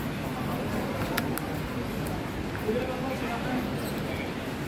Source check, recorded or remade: recorded